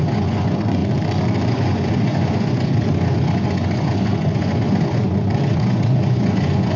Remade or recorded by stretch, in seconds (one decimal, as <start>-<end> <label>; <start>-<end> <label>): 0.0-0.8 remade; 0.8-1.5 recorded; 1.5-6.8 remade